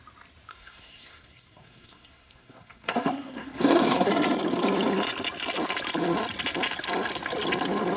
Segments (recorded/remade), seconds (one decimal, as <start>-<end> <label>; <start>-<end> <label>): 0.0-0.5 recorded; 0.5-4.1 remade; 4.1-8.0 recorded